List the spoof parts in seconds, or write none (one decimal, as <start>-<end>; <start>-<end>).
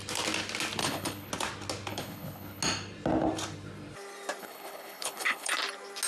0.8-1.3; 1.9-2.6; 4.4-5.5